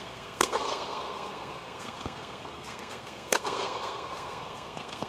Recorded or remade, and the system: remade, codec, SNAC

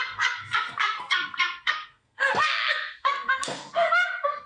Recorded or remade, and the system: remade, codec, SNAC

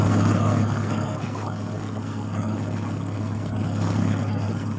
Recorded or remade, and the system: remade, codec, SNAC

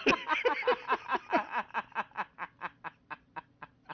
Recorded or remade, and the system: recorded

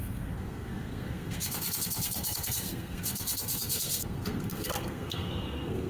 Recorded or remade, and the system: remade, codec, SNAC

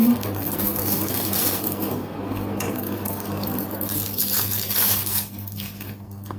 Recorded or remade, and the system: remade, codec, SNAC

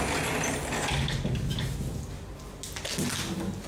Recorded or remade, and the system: recorded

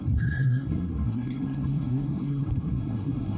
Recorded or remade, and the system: remade, codec, SNAC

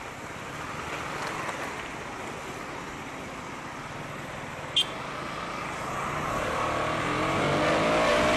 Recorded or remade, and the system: recorded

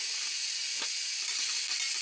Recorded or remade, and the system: recorded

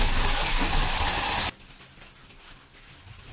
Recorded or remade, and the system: recorded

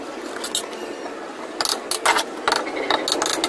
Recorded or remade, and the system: recorded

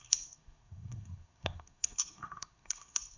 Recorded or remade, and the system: remade, codec, SNAC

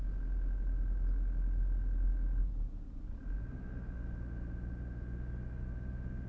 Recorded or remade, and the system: recorded